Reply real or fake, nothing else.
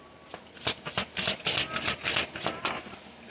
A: real